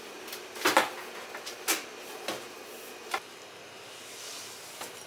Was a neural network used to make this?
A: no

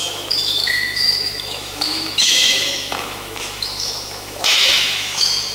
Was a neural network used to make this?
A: yes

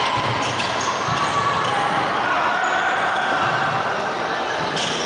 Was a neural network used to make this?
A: no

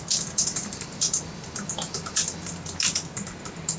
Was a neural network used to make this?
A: no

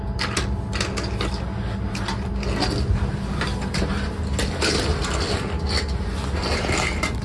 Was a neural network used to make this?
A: no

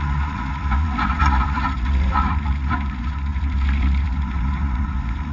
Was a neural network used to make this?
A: yes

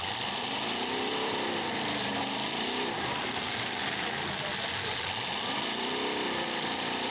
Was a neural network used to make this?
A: yes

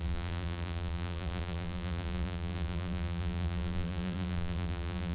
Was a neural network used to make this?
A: yes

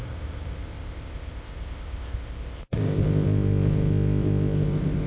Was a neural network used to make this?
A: yes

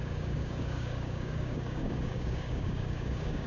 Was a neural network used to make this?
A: yes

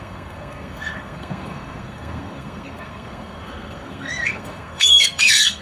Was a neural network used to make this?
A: yes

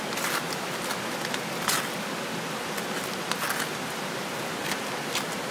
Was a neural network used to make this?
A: no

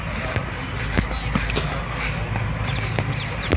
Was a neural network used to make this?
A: no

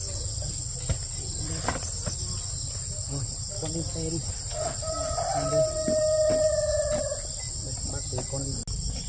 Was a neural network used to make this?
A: no